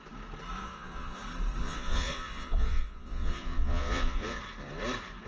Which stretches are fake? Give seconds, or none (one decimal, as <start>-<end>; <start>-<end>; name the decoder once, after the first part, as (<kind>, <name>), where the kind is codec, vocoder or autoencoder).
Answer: 0.6-1.2 (vocoder, Vocos); 1.6-4.4